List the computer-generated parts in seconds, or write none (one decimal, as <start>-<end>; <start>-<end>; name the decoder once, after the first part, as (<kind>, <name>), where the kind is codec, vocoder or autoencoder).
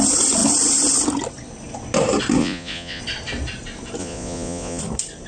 2.4-3.0 (vocoder, Vocos); 4.0-4.8